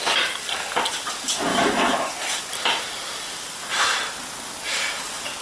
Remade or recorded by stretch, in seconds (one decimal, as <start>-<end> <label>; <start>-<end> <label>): 0.0-1.5 recorded; 1.5-2.1 remade; 2.1-5.4 recorded